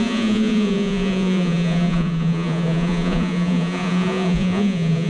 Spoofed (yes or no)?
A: yes